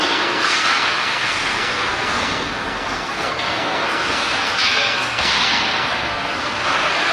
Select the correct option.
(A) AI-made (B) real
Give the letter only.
A